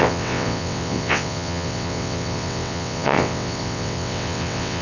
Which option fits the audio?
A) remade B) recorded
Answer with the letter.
A